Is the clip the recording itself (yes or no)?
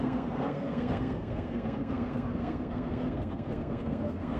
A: no